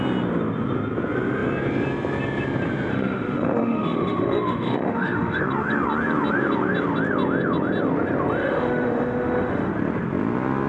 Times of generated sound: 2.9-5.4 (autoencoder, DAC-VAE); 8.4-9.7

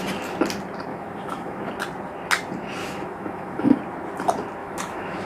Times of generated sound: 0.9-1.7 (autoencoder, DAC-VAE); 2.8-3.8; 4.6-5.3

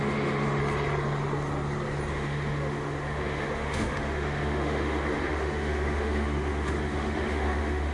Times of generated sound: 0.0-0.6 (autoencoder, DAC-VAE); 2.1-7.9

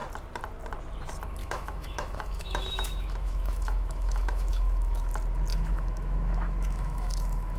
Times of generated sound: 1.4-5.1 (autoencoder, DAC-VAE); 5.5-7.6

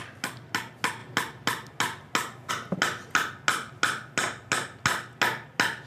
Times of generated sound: none

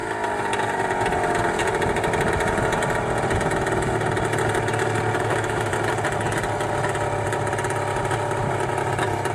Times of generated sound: 5.2-5.7 (autoencoder, DAC-VAE)

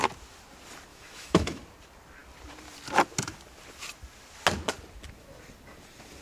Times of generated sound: 0.9-1.6 (autoencoder, DAC-VAE)

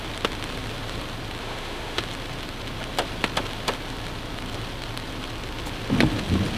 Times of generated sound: 1.4-2.0 (autoencoder, DAC-VAE)